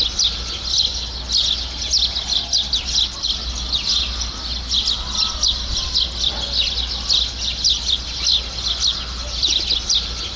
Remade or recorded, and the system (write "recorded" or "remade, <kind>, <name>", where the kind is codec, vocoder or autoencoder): recorded